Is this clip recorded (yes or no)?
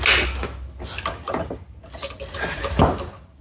yes